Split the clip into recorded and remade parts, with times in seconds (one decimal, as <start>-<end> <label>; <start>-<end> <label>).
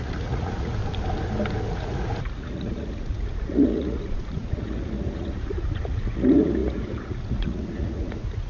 0.0-0.8 remade; 0.8-1.7 recorded; 1.7-8.5 remade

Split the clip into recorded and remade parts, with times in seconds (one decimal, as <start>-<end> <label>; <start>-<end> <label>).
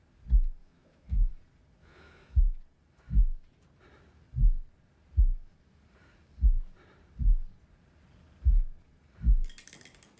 0.0-0.6 recorded; 0.6-1.3 remade; 1.3-1.8 recorded; 1.8-2.4 remade; 2.4-10.2 recorded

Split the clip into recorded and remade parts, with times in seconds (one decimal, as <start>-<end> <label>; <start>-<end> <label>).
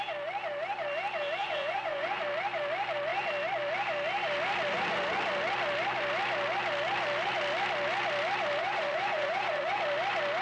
0.0-1.4 recorded; 1.4-2.2 remade; 2.2-8.6 recorded; 8.6-9.8 remade; 9.8-10.4 recorded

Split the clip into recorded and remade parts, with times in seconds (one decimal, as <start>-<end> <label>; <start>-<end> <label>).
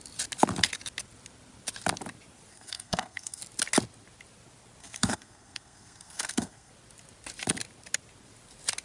0.0-2.5 recorded; 2.5-3.4 remade; 3.4-4.8 recorded; 4.8-6.7 remade; 6.7-8.8 recorded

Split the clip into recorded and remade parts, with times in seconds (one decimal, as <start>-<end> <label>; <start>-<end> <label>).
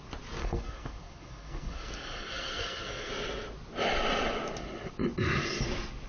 0.0-0.4 recorded; 0.4-3.1 remade; 3.1-6.1 recorded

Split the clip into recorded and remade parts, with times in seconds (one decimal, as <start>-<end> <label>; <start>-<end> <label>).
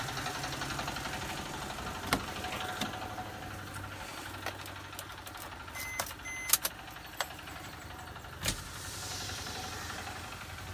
0.0-10.7 recorded